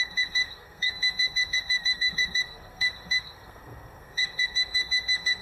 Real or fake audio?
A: fake